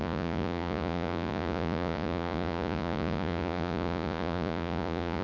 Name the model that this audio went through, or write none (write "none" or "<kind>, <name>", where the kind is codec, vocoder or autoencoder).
vocoder, Vocos